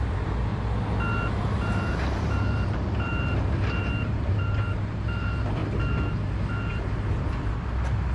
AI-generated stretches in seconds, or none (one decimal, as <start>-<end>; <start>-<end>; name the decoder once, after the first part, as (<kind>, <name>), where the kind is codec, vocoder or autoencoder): 0.0-0.5 (vocoder, BigVGAN v2); 1.3-3.1; 3.8-5.6

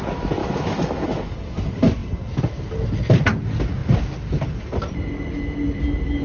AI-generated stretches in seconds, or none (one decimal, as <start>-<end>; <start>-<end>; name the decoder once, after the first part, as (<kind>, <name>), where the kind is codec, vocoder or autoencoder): 0.4-1.3 (autoencoder, DAC-VAE)

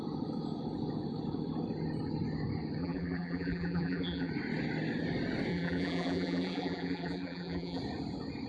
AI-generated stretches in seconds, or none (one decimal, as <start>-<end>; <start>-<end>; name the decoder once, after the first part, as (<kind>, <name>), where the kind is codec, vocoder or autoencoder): 2.8-4.3 (vocoder, BigVGAN v2); 5.5-7.8

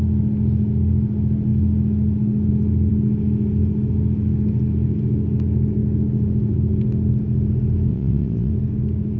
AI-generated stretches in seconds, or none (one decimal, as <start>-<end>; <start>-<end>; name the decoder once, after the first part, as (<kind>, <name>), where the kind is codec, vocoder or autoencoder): 7.9-8.5 (vocoder, WaveNeXt)